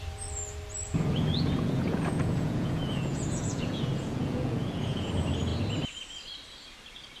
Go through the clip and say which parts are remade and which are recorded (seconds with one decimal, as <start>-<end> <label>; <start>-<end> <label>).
0.0-0.8 recorded; 0.8-5.1 remade; 5.1-7.2 recorded